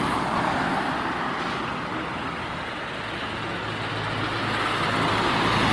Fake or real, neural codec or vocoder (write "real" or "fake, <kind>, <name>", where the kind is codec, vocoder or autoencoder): real